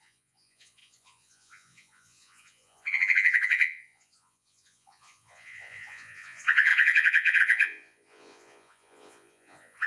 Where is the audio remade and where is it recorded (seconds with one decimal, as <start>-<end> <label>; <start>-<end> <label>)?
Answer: 0.0-9.9 remade